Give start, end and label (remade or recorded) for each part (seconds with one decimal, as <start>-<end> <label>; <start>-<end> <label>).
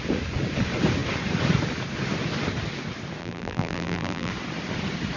0.0-3.2 recorded; 3.2-4.3 remade; 4.3-5.2 recorded